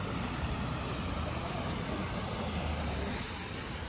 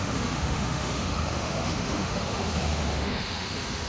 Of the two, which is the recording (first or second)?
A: first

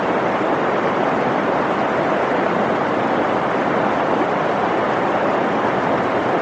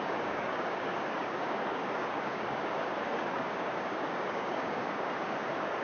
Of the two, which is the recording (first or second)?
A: first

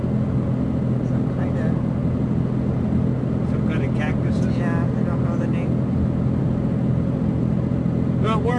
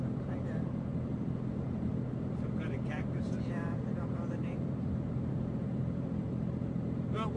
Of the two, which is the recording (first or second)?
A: first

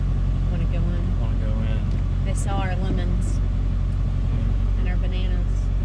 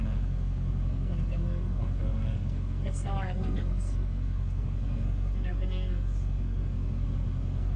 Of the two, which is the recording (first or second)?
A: first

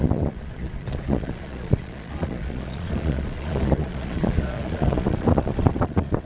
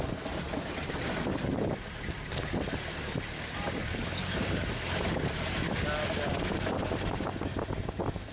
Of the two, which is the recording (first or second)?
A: second